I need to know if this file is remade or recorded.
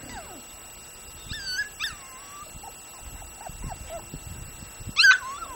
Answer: recorded